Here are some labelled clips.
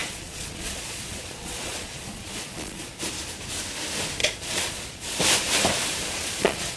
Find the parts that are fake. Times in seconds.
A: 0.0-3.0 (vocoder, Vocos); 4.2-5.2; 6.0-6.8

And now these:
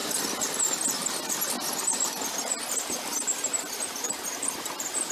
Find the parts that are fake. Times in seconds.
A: none

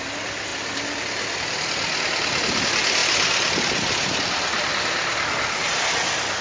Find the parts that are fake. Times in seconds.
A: none

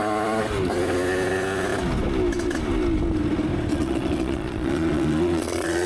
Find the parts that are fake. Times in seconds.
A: 3.7-5.9 (vocoder, Vocos)

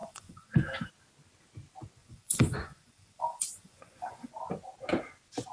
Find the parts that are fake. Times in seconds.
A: 0.0-0.9 (vocoder, Vocos); 2.0-4.3

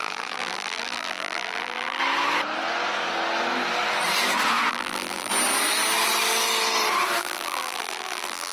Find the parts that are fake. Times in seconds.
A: 0.0-2.0 (vocoder, BigVGAN v2); 4.7-5.3; 7.2-8.5